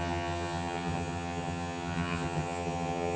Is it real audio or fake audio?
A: fake